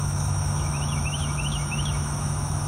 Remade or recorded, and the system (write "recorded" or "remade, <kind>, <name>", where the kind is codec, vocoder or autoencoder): remade, autoencoder, DAC-VAE